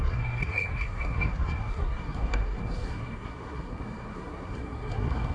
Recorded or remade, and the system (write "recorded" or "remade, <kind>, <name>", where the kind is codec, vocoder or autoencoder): remade, codec, SNAC